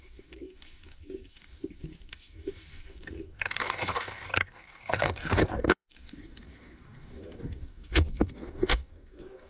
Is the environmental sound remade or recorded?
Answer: remade